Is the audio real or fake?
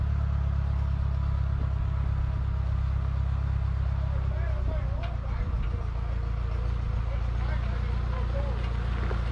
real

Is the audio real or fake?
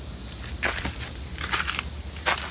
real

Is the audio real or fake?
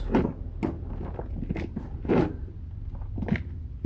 real